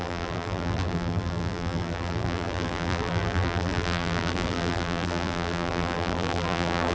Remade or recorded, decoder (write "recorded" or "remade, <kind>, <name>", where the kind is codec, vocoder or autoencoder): remade, vocoder, BigVGAN v2